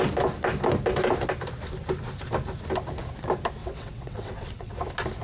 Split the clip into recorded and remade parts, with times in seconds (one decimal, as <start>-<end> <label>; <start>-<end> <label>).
0.0-3.6 recorded; 3.6-4.8 remade; 4.8-5.2 recorded